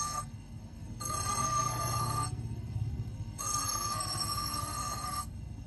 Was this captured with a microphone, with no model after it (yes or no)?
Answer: no